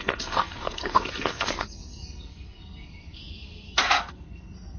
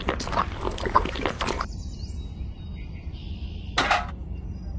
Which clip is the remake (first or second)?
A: first